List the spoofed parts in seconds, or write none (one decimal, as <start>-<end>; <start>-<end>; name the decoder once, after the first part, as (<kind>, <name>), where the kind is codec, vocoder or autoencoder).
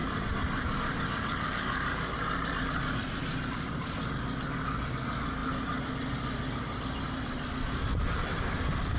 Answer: 0.0-2.6 (vocoder, BigVGAN v2); 5.4-8.4